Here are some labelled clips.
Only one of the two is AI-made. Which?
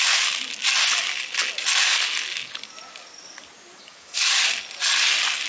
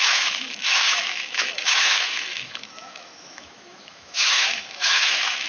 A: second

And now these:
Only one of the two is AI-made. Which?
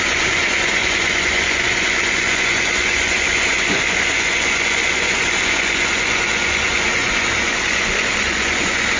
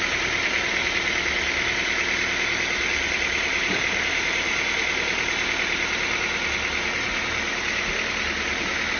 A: first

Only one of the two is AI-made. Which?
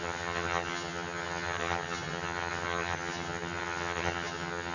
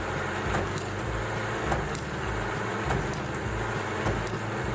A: first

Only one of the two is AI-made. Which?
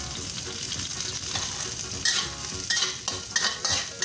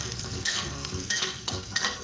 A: second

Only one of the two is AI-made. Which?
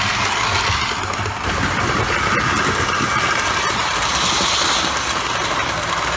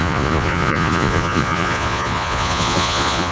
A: second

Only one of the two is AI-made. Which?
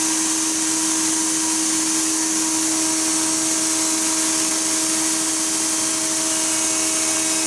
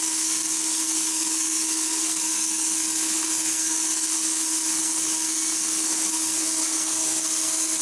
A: second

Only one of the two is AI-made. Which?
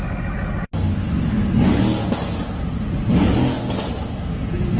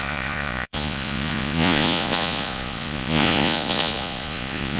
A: second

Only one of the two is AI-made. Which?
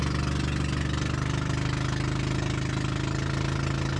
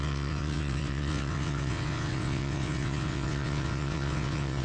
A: second